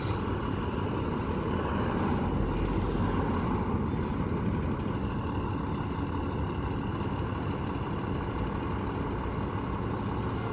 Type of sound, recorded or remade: recorded